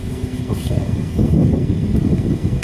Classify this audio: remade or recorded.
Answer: remade